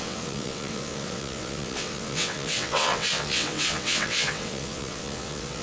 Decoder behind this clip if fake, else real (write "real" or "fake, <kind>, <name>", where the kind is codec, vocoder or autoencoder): fake, vocoder, WaveNeXt